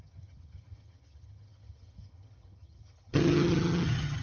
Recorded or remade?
remade